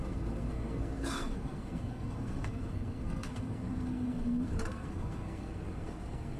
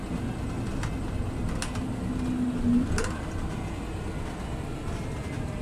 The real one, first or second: second